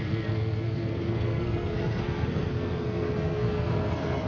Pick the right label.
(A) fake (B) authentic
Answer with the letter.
A